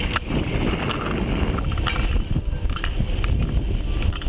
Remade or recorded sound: recorded